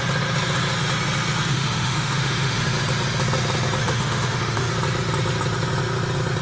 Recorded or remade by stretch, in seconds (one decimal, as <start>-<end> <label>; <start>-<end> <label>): 0.0-1.5 recorded; 1.5-2.6 remade; 2.6-3.8 recorded; 3.8-4.7 remade; 4.7-6.4 recorded